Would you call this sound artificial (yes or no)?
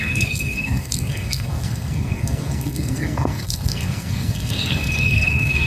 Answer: yes